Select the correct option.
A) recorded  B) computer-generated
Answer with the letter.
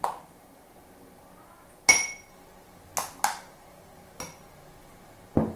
A